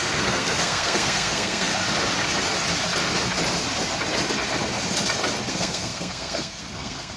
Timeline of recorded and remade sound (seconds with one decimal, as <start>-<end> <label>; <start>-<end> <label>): 0.0-1.7 remade; 1.7-5.5 recorded; 5.5-7.2 remade